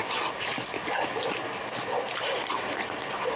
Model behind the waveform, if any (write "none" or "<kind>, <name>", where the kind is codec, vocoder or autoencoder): none